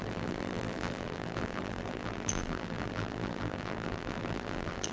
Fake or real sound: fake